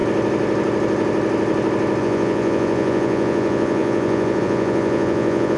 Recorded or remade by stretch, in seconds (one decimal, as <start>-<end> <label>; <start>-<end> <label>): 0.0-2.0 recorded; 2.0-5.6 remade